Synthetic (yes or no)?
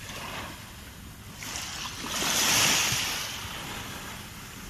no